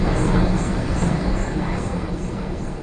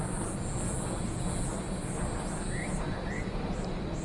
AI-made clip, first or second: first